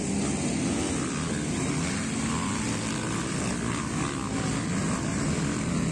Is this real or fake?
real